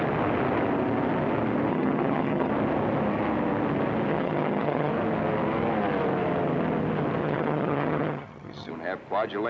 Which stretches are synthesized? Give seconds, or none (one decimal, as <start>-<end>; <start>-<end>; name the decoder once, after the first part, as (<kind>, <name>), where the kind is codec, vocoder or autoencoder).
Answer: 1.7-2.5 (vocoder, HiFi-GAN); 4.1-4.9; 7.2-8.7

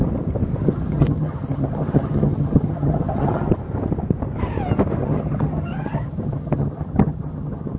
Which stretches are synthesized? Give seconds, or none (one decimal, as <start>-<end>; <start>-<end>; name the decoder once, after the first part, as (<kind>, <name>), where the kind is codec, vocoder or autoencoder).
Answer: 0.6-3.6 (vocoder, HiFi-GAN); 5.0-7.8